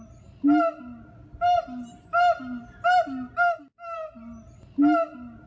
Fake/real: real